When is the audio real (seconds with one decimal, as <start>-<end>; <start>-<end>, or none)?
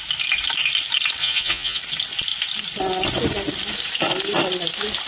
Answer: 0.0-1.2; 1.8-5.1